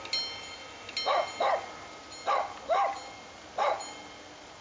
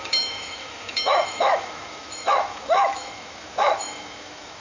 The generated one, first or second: second